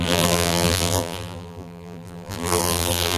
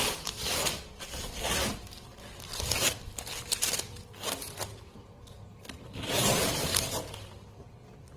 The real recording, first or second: second